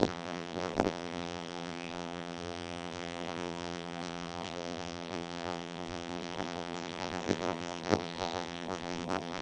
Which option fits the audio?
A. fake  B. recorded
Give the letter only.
A